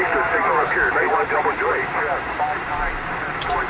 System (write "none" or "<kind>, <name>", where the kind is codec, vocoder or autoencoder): vocoder, BigVGAN v2